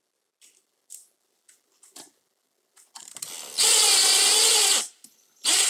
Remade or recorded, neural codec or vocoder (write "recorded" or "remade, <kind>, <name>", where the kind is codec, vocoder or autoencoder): recorded